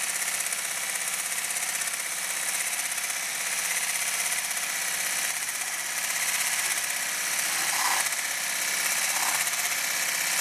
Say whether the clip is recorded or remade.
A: recorded